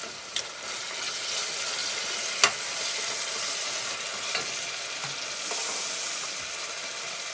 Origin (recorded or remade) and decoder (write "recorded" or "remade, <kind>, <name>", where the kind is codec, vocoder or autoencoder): recorded